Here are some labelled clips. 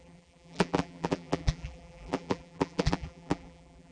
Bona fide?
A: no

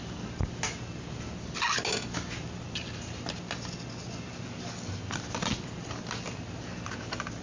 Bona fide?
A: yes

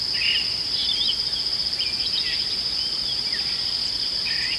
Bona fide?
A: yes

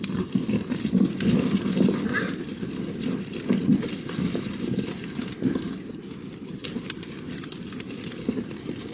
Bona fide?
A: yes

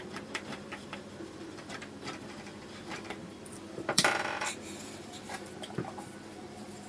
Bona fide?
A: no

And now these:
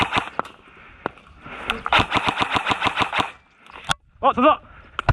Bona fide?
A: yes